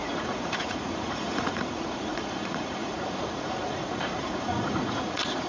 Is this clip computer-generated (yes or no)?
yes